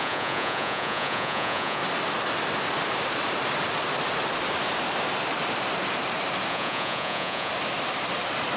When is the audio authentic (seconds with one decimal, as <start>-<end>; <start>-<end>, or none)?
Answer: 1.8-6.5; 7.5-8.6